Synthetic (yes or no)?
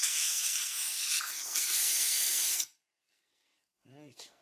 yes